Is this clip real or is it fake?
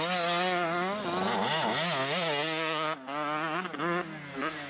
real